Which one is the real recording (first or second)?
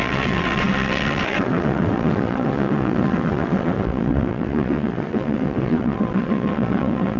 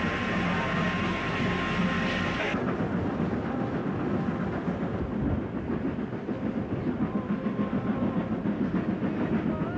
second